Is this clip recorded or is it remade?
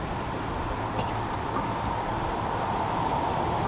recorded